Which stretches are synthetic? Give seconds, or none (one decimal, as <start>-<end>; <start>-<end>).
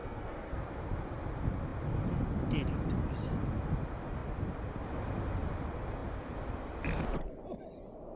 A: 0.0-0.6